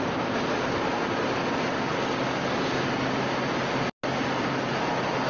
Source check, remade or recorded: recorded